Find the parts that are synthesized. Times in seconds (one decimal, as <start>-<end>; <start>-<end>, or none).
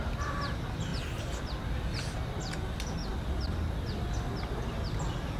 none